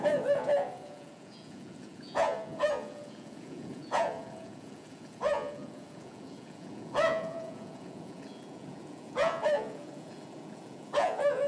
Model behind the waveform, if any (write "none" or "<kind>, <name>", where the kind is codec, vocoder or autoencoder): vocoder, Vocos